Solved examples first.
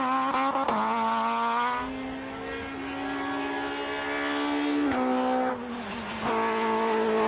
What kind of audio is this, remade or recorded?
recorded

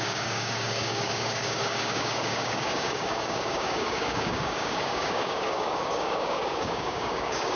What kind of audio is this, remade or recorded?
remade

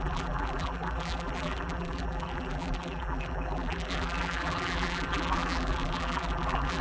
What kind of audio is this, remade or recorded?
remade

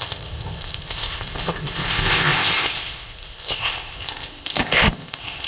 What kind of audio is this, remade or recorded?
remade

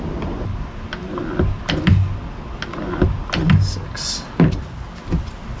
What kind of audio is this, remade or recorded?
recorded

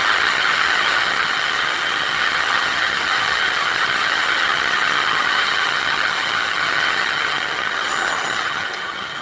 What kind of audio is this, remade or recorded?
remade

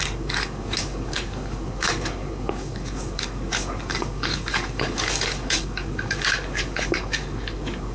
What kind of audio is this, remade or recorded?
remade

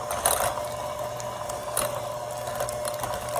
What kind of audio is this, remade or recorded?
recorded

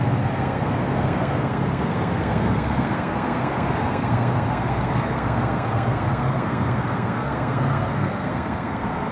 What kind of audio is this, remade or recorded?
remade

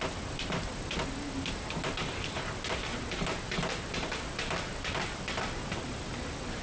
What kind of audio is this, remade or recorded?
recorded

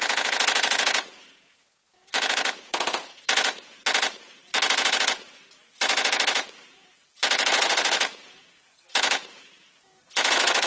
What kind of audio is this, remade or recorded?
remade